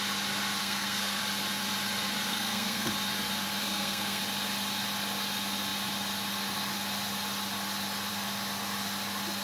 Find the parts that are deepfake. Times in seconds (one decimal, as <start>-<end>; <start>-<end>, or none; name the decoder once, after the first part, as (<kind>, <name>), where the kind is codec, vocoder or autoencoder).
0.6-1.2 (codec, SNAC); 2.3-2.9; 3.6-4.2